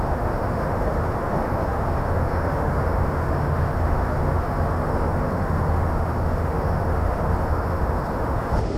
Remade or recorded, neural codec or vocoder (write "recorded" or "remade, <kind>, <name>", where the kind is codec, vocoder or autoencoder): remade, autoencoder, DAC-VAE